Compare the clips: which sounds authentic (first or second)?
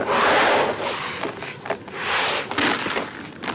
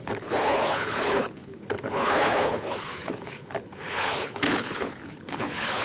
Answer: first